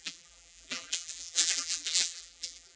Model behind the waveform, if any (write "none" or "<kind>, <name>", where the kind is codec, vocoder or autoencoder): vocoder, BigVGAN v2